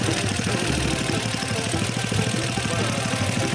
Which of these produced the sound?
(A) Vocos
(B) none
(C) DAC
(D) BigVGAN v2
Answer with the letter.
D